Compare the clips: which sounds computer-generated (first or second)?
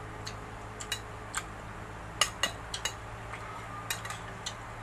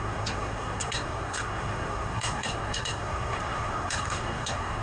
second